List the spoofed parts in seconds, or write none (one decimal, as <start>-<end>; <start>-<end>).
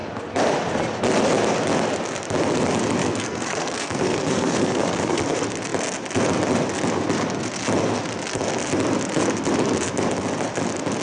3.0-5.2